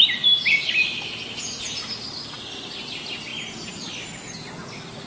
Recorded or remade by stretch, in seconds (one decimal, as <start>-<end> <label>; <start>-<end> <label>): 0.0-5.1 recorded